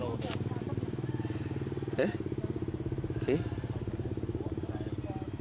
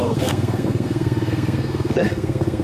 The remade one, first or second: second